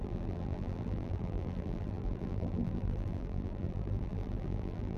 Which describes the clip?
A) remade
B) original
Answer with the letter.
A